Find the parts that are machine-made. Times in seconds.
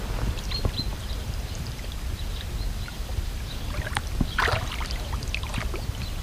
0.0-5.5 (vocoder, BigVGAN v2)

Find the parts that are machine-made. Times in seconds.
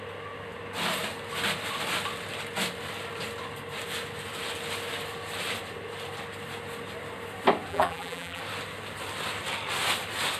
7.7-8.4 (vocoder, BigVGAN v2)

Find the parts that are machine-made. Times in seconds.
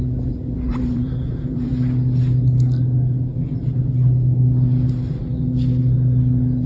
0.7-1.7 (vocoder, BigVGAN v2)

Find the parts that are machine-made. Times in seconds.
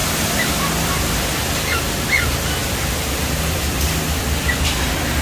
2.6-4.5 (vocoder, BigVGAN v2)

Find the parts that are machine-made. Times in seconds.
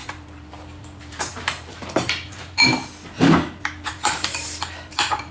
0.0-2.8 (vocoder, BigVGAN v2); 3.9-5.3